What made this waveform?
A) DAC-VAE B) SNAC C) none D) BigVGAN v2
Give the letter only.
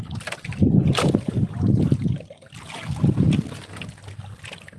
C